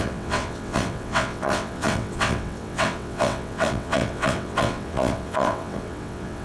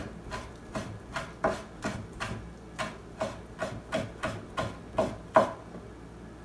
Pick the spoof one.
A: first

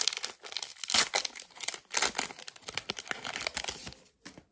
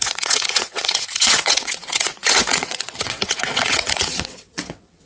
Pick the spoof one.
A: second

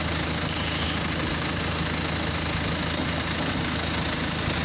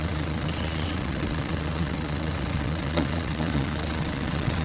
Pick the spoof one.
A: second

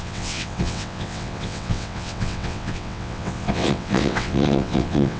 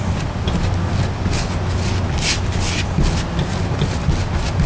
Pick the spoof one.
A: first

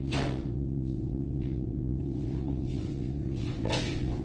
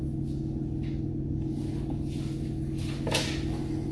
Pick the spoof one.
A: first